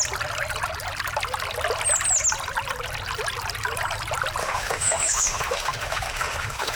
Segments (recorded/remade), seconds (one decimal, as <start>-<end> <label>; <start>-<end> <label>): 0.0-4.4 recorded; 4.4-6.8 remade